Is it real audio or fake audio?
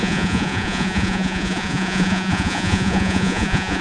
fake